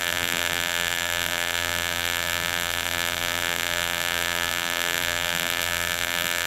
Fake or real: fake